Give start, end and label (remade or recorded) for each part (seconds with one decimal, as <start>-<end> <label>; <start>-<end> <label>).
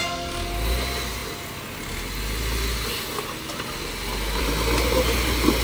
0.0-5.6 recorded